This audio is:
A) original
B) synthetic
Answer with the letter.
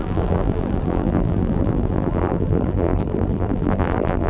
B